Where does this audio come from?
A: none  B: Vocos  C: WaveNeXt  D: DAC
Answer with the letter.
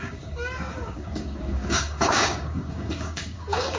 D